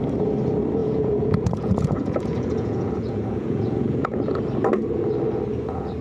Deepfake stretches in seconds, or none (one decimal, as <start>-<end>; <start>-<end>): 0.8-4.4

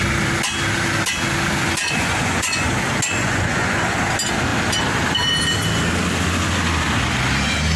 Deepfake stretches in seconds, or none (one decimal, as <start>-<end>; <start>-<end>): 1.6-2.7; 3.2-3.8

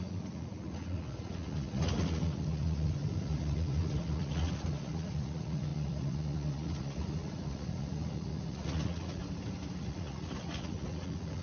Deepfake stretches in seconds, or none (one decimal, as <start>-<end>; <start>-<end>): 0.0-9.2; 9.8-11.4

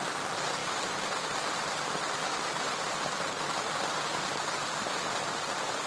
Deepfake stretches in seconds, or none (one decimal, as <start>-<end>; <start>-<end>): none

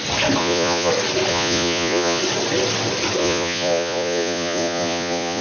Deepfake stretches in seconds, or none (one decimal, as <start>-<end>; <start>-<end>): 0.4-0.9; 1.3-2.2; 3.2-5.4

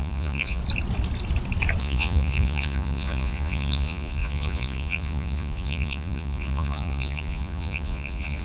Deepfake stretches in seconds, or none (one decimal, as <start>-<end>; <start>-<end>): 0.0-0.6; 1.8-8.4